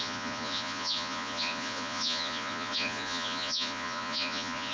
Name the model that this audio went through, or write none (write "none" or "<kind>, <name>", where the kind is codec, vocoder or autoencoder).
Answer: vocoder, Vocos